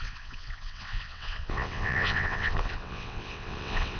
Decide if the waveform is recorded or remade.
remade